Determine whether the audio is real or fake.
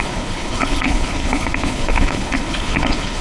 fake